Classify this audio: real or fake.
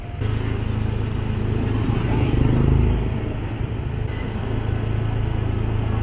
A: real